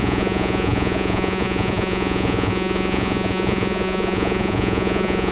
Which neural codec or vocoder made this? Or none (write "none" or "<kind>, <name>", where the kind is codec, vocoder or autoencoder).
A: vocoder, Vocos